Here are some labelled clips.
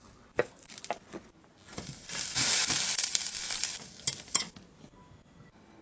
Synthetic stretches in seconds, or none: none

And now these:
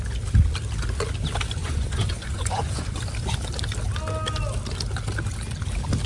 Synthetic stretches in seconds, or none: 1.6-3.0

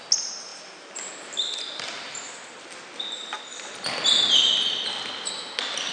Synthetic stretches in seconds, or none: none

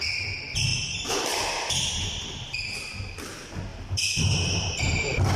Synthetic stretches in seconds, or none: 0.7-1.4